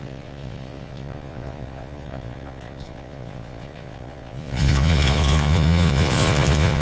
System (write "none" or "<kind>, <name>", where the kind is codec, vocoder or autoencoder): vocoder, Vocos